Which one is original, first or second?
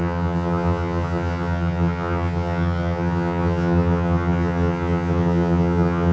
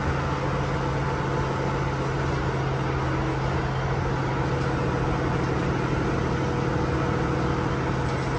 second